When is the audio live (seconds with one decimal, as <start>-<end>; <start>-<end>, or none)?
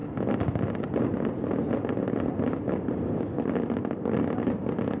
0.0-5.0